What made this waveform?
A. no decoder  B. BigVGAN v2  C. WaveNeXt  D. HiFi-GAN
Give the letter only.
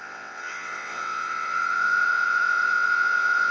C